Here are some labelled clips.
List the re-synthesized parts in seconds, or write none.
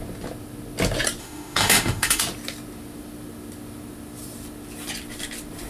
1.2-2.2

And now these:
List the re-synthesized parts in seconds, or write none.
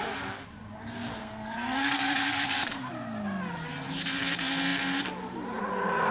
1.2-2.9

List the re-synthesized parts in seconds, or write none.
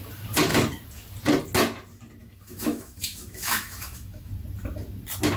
2.2-4.3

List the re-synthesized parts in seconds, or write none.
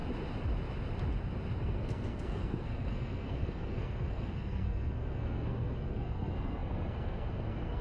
1.6-7.8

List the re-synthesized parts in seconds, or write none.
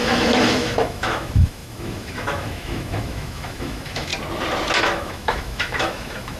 0.0-4.1; 4.8-6.4